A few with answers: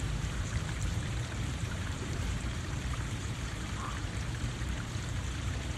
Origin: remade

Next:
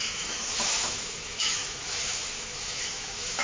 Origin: remade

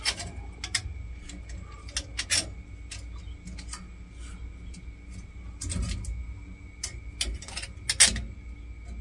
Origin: recorded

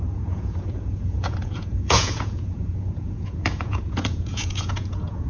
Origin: remade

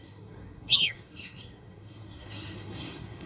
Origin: remade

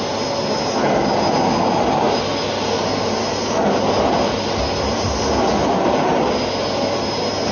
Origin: recorded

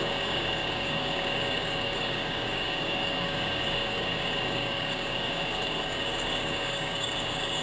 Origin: remade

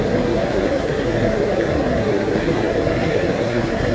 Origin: remade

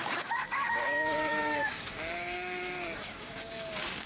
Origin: remade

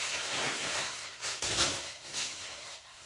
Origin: remade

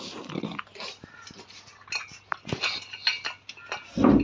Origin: recorded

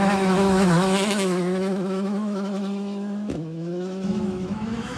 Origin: remade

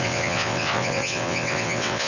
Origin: remade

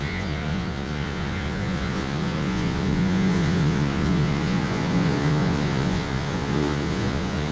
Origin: remade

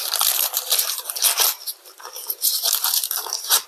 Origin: remade